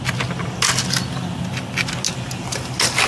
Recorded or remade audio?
recorded